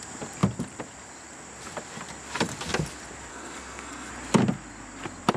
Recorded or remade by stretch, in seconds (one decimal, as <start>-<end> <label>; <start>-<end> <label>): 0.0-3.3 recorded; 3.3-4.1 remade; 4.1-5.4 recorded